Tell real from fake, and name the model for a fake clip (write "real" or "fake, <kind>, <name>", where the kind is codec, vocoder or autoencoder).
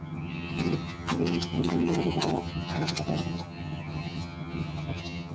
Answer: fake, vocoder, HiFi-GAN